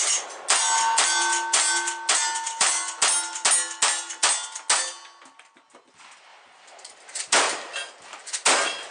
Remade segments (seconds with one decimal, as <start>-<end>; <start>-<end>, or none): 6.3-7.2